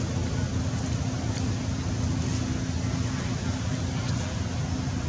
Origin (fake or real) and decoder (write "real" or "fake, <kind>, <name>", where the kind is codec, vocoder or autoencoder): real